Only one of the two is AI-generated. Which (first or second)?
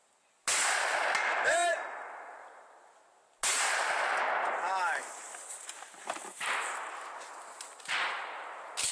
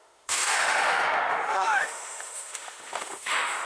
second